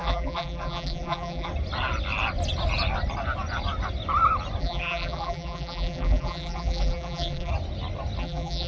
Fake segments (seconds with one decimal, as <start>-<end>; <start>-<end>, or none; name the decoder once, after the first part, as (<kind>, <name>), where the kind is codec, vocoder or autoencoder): 0.0-1.5 (vocoder, BigVGAN v2); 4.6-7.5; 8.2-8.7